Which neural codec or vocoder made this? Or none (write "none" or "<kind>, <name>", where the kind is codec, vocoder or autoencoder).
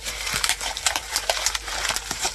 vocoder, BigVGAN v2